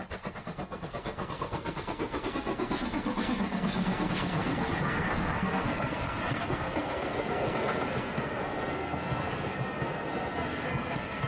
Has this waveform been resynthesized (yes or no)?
yes